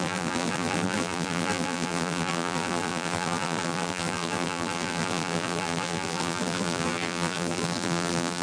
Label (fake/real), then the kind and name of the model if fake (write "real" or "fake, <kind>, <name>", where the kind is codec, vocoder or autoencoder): fake, vocoder, BigVGAN v2